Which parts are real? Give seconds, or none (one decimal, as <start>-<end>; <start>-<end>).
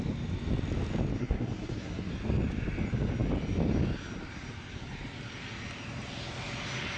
0.0-1.2; 2.1-7.0